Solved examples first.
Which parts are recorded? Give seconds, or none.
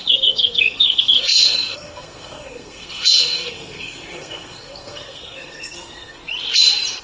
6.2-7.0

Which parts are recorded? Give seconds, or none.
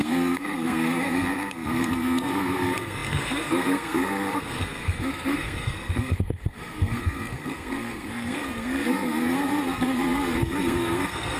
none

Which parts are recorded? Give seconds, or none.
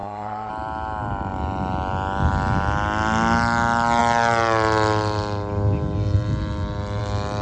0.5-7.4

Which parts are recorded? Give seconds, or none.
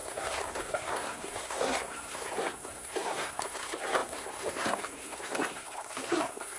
none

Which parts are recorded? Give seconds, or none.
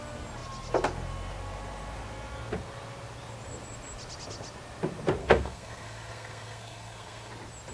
0.0-5.2; 7.3-7.7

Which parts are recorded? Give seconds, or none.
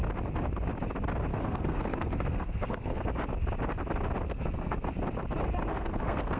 0.0-1.3; 3.1-4.3; 4.9-5.7